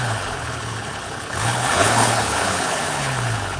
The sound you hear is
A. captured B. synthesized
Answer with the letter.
B